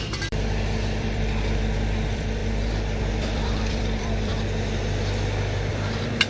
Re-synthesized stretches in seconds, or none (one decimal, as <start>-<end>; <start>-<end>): 0.0-2.4; 3.0-4.3; 5.7-6.3